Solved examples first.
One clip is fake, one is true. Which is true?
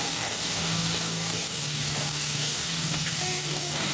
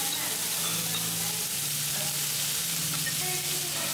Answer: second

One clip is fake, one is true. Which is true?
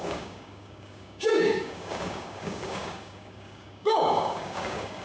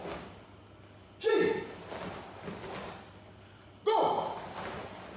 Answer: second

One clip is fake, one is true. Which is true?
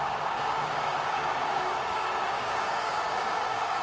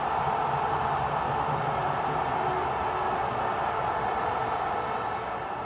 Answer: second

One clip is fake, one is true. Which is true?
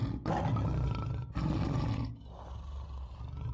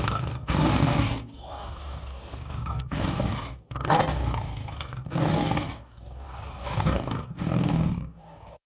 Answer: first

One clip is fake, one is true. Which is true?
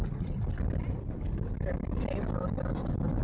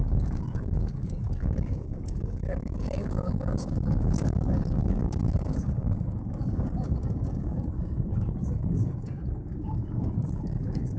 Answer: first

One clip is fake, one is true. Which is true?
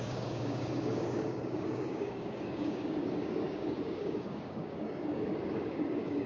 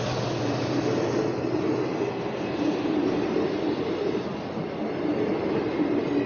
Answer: second